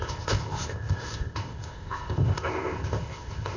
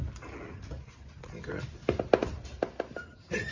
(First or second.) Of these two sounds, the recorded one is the second